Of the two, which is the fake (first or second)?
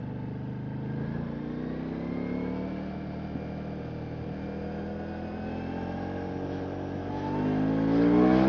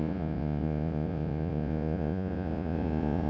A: second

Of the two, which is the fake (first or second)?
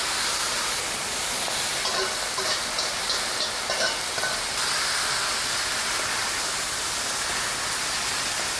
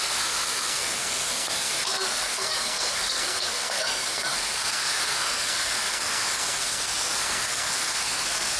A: second